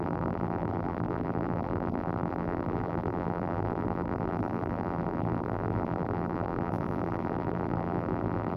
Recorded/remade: remade